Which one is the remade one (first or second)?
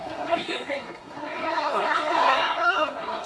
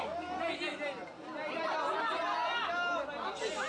first